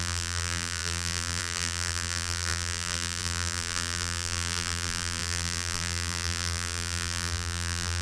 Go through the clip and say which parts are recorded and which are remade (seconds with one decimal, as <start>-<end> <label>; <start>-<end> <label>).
0.0-8.0 remade